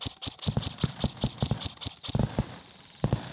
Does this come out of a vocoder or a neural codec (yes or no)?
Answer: no